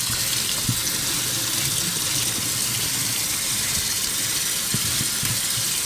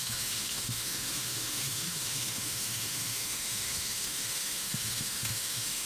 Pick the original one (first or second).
first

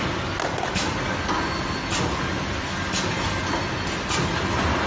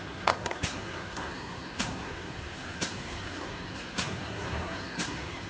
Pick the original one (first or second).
first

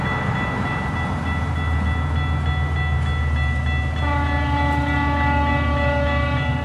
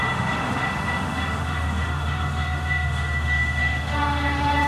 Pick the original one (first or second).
first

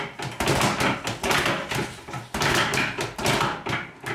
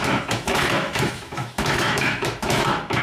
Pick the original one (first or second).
first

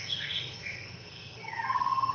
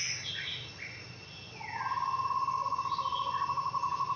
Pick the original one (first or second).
second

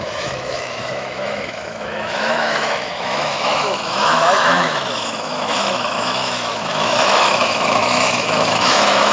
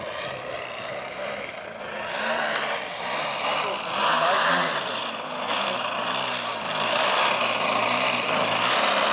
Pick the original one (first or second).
second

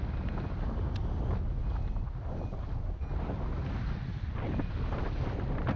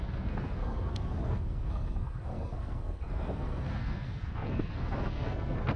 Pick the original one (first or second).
first